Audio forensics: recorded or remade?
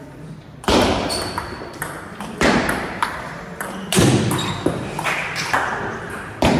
remade